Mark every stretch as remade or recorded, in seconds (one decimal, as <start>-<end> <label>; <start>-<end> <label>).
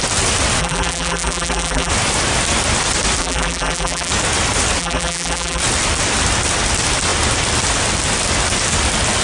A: 0.0-0.6 recorded; 0.6-1.9 remade; 1.9-3.2 recorded; 3.2-4.1 remade; 4.1-4.8 recorded; 4.8-5.6 remade; 5.6-9.2 recorded